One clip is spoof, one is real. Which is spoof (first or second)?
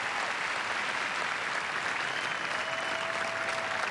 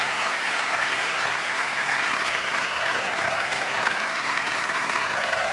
second